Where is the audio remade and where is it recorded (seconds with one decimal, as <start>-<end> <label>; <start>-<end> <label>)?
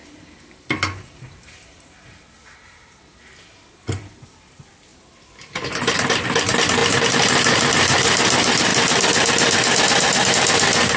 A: 0.0-11.0 recorded